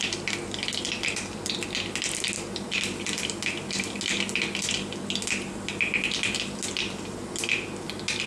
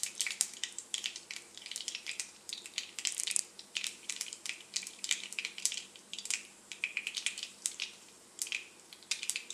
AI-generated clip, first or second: second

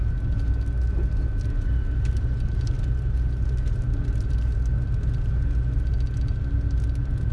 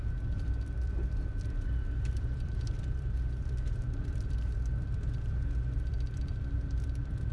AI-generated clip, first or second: second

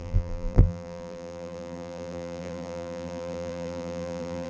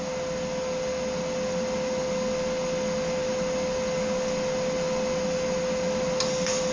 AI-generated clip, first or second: first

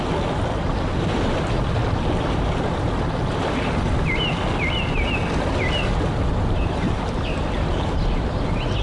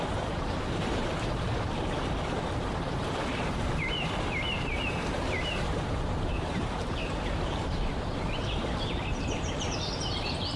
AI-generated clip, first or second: second